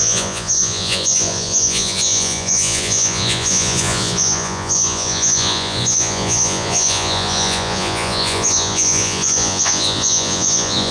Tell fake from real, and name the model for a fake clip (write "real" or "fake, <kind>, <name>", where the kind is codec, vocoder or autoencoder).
fake, vocoder, Vocos